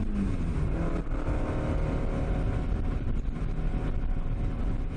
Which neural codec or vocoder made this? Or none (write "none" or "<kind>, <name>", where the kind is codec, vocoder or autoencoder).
none